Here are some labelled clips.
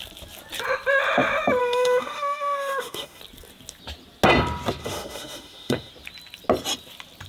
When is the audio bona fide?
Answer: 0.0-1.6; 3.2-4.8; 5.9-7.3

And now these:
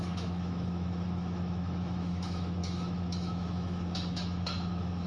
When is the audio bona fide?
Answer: none

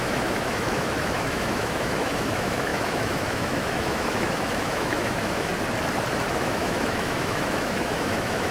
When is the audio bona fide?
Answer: 5.5-6.3

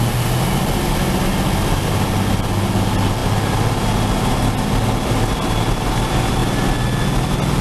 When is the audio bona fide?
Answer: 0.0-7.6

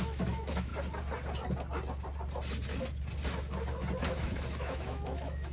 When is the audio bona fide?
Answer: 0.7-4.0

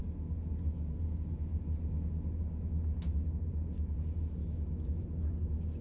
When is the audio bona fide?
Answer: 0.0-4.4; 5.0-5.8

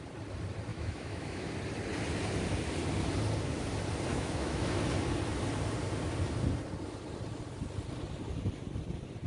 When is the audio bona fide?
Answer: 0.0-0.7; 1.5-4.1; 4.8-9.3

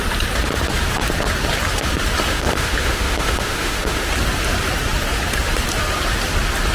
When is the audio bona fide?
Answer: 0.0-2.3; 4.1-6.7